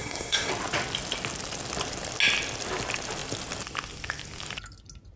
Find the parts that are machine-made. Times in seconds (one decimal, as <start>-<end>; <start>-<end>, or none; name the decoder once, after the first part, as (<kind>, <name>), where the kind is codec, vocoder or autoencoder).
0.0-0.5 (codec, SNAC)